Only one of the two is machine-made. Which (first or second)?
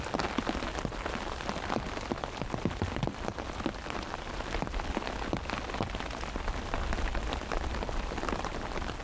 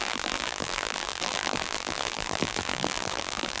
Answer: second